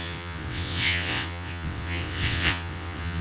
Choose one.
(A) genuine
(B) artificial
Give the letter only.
B